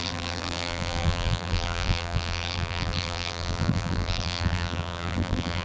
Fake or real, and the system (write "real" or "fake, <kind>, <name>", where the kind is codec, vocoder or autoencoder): fake, vocoder, BigVGAN v2